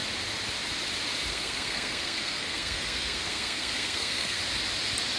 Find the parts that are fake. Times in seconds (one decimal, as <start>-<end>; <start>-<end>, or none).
1.3-4.4